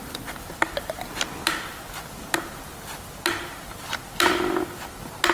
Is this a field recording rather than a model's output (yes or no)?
yes